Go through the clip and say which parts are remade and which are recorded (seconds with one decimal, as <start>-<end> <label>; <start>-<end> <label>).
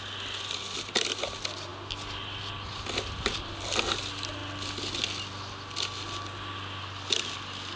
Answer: 0.0-7.8 recorded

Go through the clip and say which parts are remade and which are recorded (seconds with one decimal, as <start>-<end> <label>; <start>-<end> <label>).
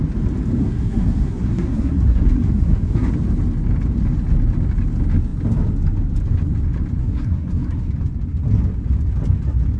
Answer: 0.0-0.6 recorded; 0.6-3.1 remade; 3.1-7.0 recorded; 7.0-7.9 remade; 7.9-9.8 recorded